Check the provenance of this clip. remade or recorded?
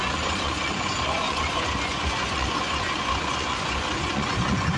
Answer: remade